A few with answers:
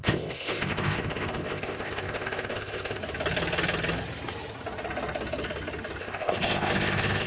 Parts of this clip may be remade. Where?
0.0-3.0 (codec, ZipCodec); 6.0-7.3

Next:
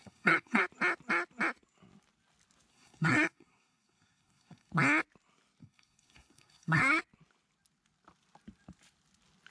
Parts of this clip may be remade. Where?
0.0-0.6 (codec, SNAC); 2.7-4.7; 5.6-7.0

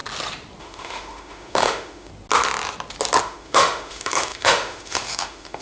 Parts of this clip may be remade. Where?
0.6-2.1 (autoencoder, DAC-VAE); 3.2-5.6

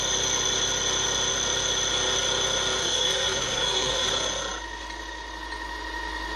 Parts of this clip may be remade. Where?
2.8-4.1 (codec, SNAC)

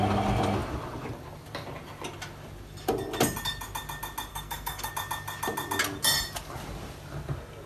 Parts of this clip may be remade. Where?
4.3-4.9 (codec, SNAC)

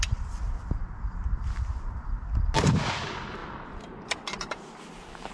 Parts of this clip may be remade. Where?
none

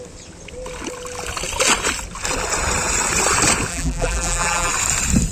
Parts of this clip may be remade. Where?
3.7-4.7 (vocoder, BigVGAN v2)

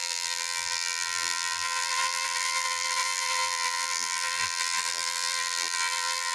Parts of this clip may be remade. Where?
0.0-6.3 (vocoder, BigVGAN v2)